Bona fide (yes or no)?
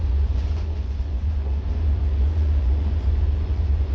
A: no